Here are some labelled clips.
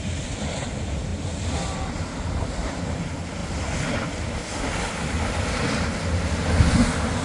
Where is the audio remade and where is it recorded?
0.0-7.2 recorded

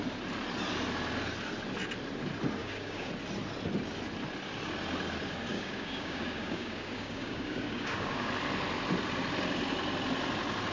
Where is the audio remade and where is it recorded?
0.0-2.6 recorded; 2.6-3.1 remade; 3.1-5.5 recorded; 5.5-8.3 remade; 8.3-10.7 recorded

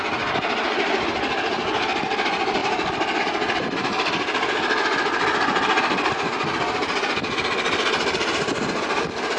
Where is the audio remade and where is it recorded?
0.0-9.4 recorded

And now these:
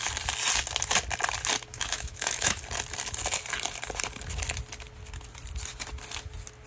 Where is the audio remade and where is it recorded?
0.0-1.7 recorded; 1.7-2.6 remade; 2.6-6.7 recorded

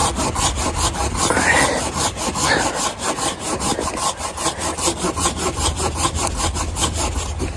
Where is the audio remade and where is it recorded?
0.0-7.6 recorded